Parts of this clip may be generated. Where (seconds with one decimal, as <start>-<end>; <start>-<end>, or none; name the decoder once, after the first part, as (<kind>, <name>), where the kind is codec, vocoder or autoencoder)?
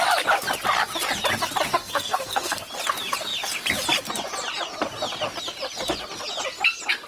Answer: 1.8-2.6 (codec, SNAC)